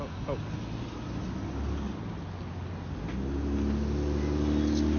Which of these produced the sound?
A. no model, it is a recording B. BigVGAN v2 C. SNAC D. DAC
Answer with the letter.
A